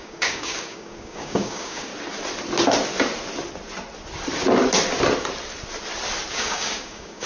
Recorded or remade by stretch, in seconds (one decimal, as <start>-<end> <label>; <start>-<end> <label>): 0.0-1.9 remade; 1.9-6.3 recorded; 6.3-7.3 remade